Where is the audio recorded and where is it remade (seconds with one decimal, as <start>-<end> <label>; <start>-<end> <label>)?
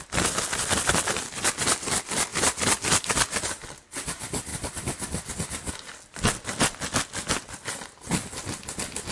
0.0-9.1 recorded